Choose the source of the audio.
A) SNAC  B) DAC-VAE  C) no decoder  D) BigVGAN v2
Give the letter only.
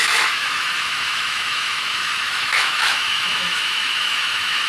B